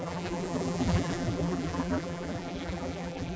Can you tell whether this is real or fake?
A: fake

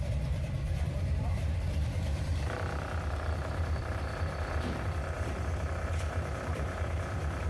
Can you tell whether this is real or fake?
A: fake